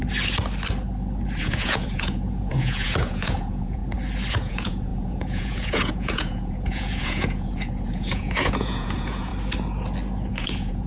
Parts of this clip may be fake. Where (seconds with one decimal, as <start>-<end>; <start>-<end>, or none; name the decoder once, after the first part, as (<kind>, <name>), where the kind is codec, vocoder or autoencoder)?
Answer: 1.4-3.8 (vocoder, Vocos); 4.3-9.3; 10.3-10.9